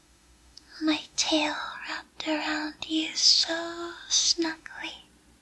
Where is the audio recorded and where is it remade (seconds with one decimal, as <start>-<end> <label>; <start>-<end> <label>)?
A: 0.0-1.3 remade; 1.3-3.2 recorded; 3.2-4.9 remade; 4.9-5.4 recorded